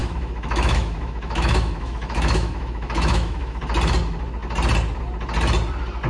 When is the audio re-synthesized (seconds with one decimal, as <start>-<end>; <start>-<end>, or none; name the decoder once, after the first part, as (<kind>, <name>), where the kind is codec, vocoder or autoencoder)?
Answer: 0.0-3.6 (autoencoder, DAC-VAE)